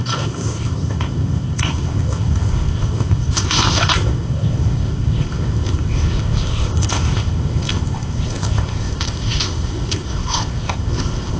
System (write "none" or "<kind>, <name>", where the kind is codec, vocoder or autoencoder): codec, ZipCodec